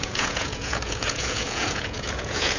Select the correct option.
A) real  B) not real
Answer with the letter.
B